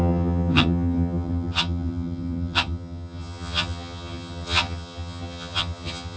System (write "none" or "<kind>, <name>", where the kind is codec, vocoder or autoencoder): vocoder, HiFi-GAN